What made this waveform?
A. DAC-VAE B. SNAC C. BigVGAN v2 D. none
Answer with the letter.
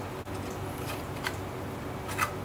D